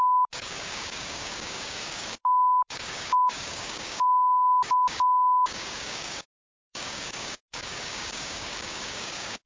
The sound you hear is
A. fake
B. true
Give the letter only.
A